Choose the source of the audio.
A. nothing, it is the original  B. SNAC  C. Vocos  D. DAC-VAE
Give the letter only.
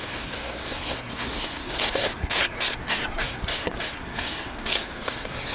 B